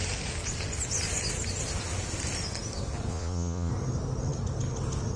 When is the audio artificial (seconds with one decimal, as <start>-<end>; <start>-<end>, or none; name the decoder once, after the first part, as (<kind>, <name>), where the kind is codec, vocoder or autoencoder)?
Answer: 3.1-3.7 (vocoder, Vocos)